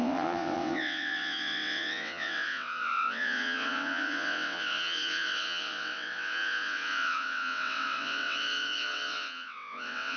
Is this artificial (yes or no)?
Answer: yes